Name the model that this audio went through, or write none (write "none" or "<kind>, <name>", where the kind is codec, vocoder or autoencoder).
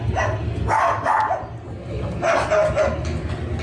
none